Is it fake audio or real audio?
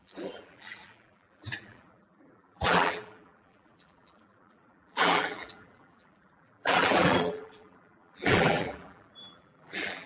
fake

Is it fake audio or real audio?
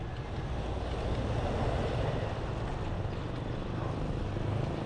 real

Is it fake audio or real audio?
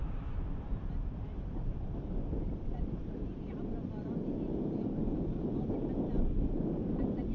fake